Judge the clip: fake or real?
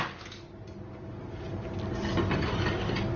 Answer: real